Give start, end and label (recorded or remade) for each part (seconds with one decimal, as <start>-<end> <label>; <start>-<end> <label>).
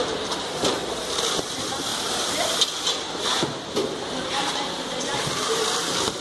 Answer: 0.0-1.9 recorded; 1.9-5.6 remade; 5.6-6.2 recorded